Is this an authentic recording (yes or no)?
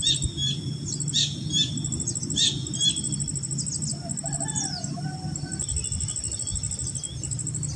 yes